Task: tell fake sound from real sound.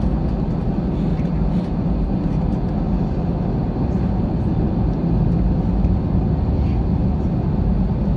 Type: real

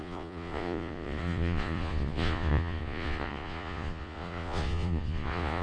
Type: fake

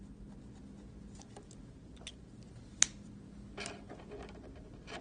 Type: real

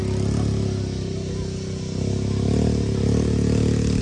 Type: real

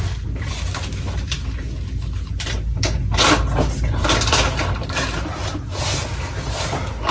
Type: real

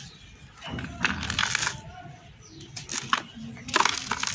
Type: real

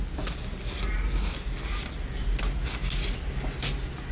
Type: real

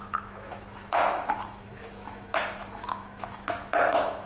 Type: fake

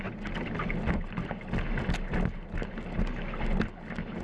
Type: real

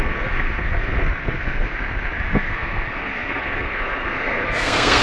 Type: fake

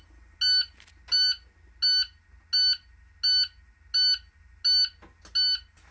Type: real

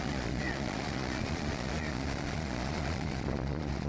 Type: fake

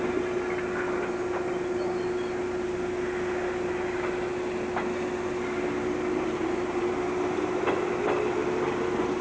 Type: real